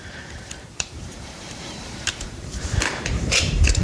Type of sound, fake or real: fake